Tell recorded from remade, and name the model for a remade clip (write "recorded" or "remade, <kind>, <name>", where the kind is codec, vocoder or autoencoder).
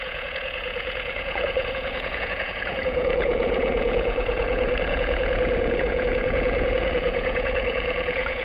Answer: remade, vocoder, Vocos